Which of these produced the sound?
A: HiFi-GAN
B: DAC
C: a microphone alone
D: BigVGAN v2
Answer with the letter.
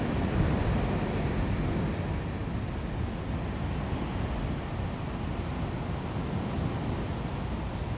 C